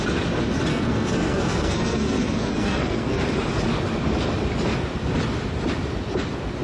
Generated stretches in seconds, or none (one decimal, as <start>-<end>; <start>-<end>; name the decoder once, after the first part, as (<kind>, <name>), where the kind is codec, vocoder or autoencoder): 0.7-3.2 (codec, SNAC)